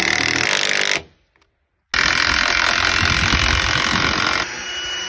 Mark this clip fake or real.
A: real